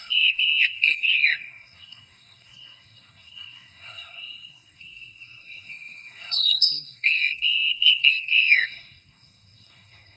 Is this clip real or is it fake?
fake